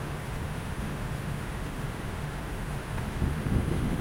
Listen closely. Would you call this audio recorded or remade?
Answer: remade